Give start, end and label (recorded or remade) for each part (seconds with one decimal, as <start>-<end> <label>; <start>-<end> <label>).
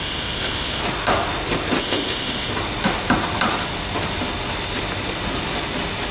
0.0-0.8 remade; 0.8-1.8 recorded; 1.8-2.5 remade; 2.5-6.1 recorded